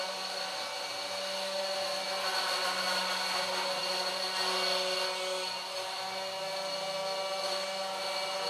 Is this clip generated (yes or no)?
no